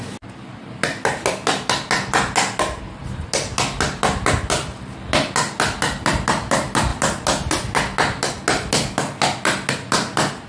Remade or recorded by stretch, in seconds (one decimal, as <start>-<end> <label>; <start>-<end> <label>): 0.0-10.5 recorded